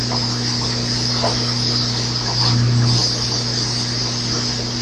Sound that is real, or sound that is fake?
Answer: real